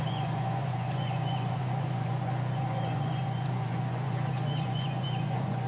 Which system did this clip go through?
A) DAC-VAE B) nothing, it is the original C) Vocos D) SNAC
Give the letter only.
C